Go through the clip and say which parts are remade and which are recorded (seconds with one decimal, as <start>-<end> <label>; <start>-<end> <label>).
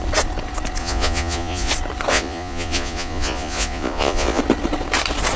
0.0-0.8 recorded; 0.8-1.7 remade; 1.7-2.1 recorded; 2.1-4.4 remade; 4.4-5.4 recorded